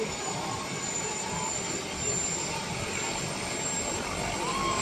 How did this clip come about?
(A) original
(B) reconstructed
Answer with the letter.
B